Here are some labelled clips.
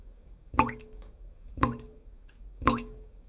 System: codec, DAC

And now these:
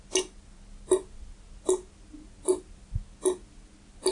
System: none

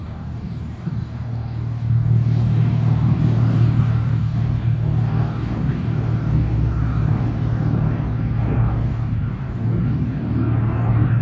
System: codec, DAC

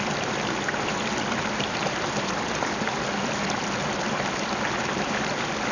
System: none